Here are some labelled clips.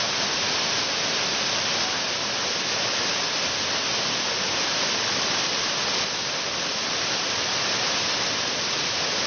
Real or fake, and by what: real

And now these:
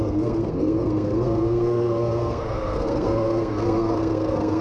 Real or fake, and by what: fake, codec, SNAC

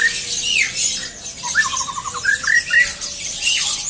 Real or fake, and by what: real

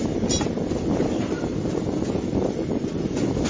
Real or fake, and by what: real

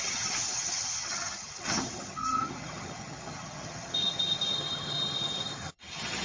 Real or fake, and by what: fake, vocoder, HiFi-GAN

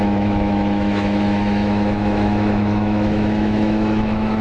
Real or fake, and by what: fake, autoencoder, DAC-VAE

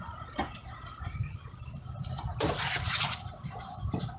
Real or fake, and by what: real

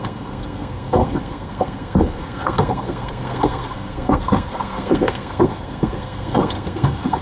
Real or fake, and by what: fake, codec, SNAC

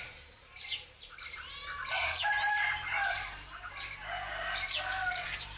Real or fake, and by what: fake, vocoder, BigVGAN v2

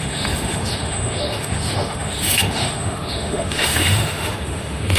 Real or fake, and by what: fake, autoencoder, DAC-VAE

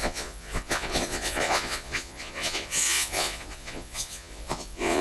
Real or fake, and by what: fake, vocoder, Vocos